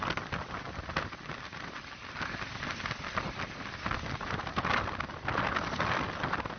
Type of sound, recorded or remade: recorded